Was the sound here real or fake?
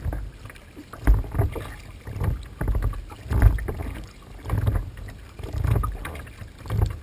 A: real